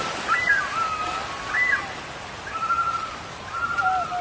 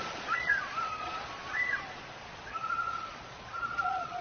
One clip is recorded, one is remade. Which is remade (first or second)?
second